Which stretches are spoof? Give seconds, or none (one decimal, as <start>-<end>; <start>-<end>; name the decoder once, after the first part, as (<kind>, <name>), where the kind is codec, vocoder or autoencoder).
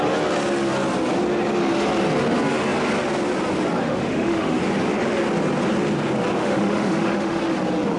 3.8-4.6 (autoencoder, DAC-VAE); 6.4-7.4